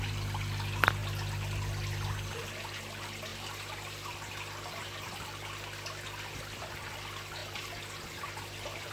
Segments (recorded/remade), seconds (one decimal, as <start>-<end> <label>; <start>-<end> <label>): 0.0-8.9 recorded